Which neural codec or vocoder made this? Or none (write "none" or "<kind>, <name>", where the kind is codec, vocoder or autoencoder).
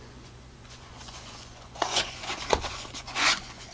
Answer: vocoder, Vocos